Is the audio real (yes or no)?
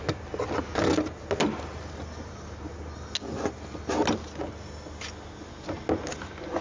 yes